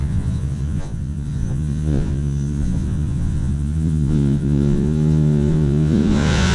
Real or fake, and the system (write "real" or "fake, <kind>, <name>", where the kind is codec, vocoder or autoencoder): fake, vocoder, Vocos